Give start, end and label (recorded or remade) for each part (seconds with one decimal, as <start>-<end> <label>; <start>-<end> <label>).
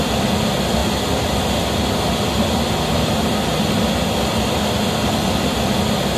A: 0.0-6.2 recorded